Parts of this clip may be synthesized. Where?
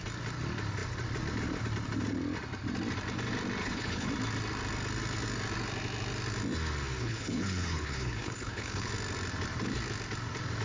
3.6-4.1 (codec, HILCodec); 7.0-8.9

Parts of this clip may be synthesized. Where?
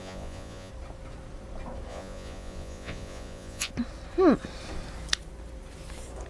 0.0-0.7 (vocoder, Vocos); 1.9-3.7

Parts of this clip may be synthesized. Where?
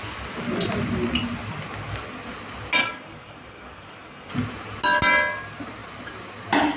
2.8-4.3 (codec, DAC)